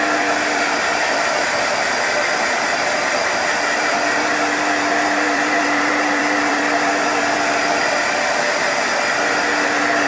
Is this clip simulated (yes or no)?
yes